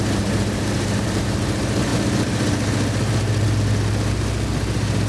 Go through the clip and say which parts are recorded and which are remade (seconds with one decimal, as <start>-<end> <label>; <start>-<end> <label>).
0.0-1.9 remade; 1.9-5.1 recorded